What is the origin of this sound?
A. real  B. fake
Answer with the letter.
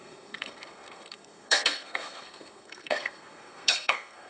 B